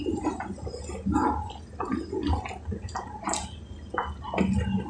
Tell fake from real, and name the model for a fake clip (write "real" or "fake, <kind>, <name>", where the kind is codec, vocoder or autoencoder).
real